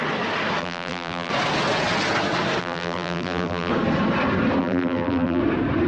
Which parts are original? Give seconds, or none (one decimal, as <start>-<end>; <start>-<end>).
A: 0.0-0.6; 1.3-2.6; 3.7-4.6; 5.4-5.9